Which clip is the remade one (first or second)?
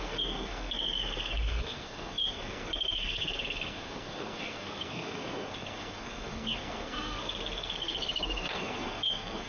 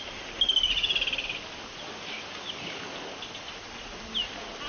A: first